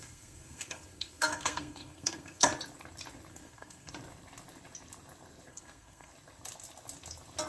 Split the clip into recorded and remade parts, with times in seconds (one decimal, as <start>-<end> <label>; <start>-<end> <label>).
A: 0.0-2.5 remade; 2.5-3.3 recorded; 3.3-3.9 remade; 3.9-5.5 recorded; 5.5-6.1 remade; 6.1-7.5 recorded